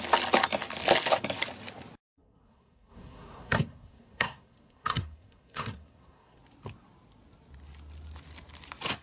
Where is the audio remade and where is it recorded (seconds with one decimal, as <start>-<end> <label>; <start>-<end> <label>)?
0.0-2.1 recorded; 2.1-6.4 remade; 6.4-9.0 recorded